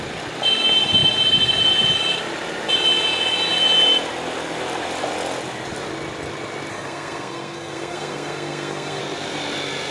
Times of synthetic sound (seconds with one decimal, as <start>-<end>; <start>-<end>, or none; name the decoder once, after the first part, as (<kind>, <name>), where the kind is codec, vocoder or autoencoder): 6.7-9.0 (codec, SNAC)